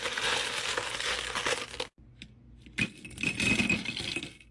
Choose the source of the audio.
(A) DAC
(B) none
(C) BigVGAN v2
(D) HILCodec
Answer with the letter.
B